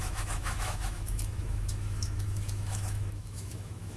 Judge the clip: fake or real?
fake